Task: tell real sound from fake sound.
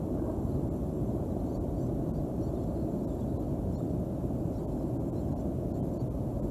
real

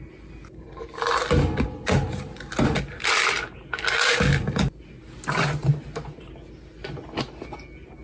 real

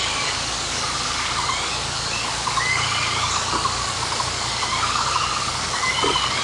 fake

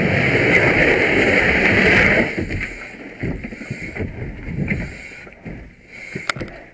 real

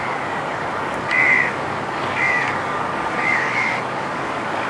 fake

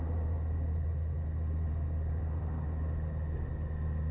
real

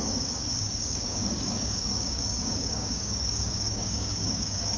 fake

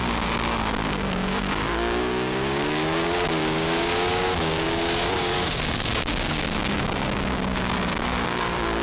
fake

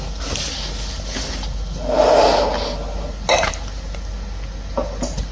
real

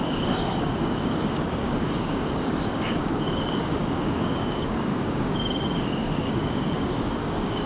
fake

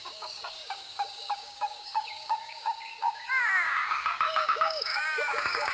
fake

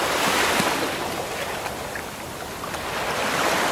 real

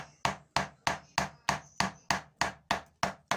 real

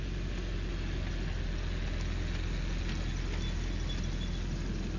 real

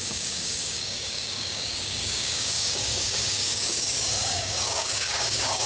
fake